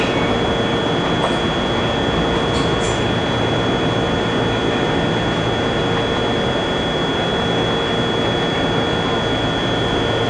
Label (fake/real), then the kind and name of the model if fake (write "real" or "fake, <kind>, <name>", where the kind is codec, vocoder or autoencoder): real